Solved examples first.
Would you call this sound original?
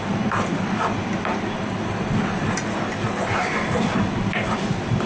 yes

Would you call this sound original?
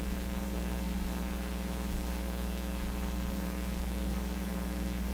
no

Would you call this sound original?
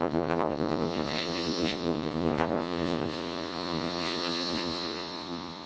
no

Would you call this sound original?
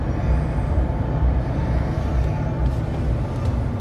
yes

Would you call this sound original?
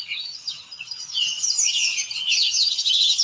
no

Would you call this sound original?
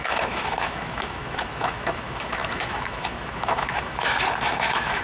no